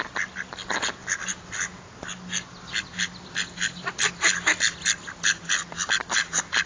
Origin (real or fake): real